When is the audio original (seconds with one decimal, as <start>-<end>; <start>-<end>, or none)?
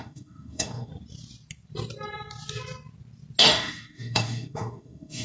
0.9-3.4